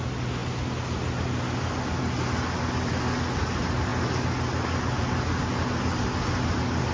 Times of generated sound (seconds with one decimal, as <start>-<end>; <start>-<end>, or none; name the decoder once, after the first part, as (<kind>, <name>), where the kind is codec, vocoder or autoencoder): none